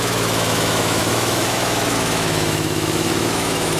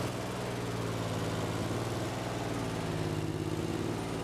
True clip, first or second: second